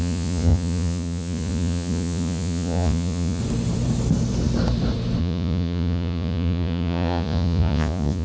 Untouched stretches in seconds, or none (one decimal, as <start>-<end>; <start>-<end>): 3.4-5.2